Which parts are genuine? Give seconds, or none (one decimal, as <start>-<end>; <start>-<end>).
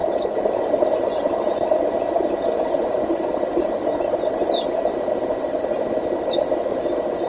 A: 0.0-7.3